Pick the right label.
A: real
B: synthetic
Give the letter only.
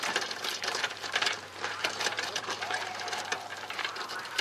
B